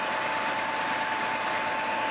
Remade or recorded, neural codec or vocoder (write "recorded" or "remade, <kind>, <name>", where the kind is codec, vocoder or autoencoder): remade, vocoder, BigVGAN v2